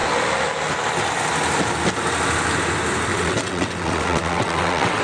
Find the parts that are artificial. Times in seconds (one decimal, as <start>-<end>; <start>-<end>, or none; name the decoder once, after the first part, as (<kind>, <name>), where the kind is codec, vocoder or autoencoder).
3.1-5.0 (vocoder, WaveNeXt)

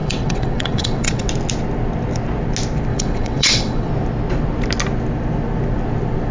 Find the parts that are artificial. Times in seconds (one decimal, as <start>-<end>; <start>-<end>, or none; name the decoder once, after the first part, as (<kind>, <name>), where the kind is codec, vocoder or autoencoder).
0.0-1.3 (vocoder, WaveNeXt); 2.9-3.9

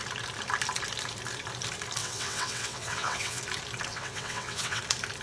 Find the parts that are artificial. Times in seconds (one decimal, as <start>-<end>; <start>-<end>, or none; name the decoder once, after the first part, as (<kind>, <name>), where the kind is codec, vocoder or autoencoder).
2.0-3.4 (vocoder, WaveNeXt); 3.9-4.8

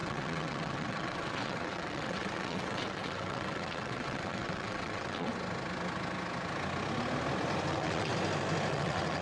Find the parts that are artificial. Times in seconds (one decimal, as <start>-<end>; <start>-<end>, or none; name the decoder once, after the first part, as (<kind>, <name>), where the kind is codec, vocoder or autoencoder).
0.0-5.3 (vocoder, WaveNeXt); 7.7-8.1; 8.7-9.2